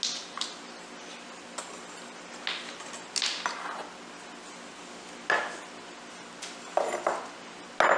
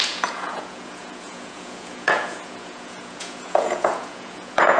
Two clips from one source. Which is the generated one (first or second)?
second